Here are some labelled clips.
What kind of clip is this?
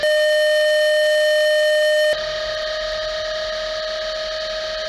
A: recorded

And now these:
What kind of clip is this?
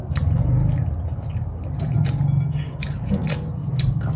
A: recorded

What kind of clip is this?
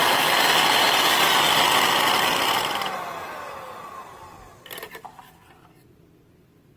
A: recorded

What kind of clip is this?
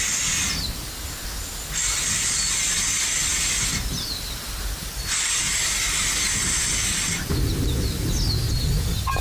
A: recorded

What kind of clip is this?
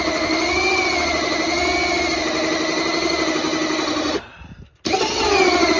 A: recorded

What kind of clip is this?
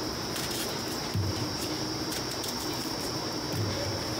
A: remade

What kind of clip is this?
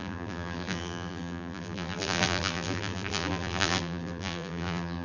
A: remade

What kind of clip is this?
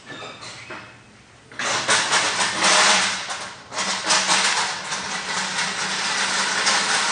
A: recorded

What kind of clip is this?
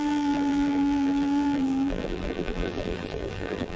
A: remade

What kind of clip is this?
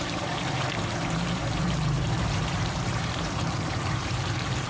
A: remade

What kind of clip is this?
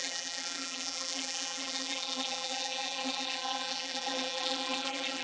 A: remade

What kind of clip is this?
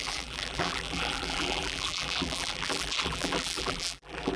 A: remade